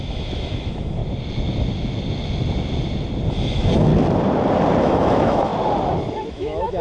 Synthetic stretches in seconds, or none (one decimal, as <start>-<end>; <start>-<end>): 0.0-1.0; 3.3-3.9; 4.8-5.5; 6.3-6.8